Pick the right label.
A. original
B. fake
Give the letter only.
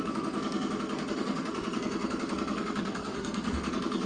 B